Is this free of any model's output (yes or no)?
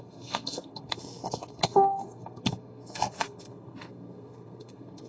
no